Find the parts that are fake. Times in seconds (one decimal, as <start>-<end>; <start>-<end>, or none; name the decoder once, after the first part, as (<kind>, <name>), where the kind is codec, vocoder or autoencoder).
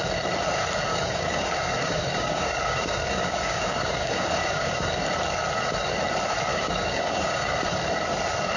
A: 0.9-4.9 (codec, DAC); 6.5-7.7